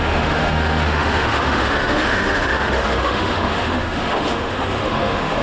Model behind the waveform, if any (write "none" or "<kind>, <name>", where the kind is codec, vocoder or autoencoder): autoencoder, DAC-VAE